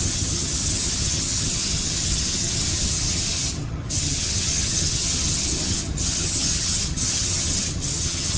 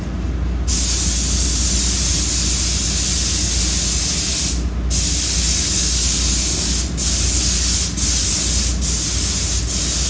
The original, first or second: second